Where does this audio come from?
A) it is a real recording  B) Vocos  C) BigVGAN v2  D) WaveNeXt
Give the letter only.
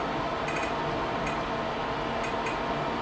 A